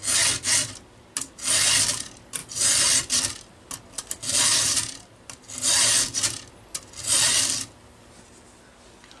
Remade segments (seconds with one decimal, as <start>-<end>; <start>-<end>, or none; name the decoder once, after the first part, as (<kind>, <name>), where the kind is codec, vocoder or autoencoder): none